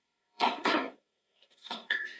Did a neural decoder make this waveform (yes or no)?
yes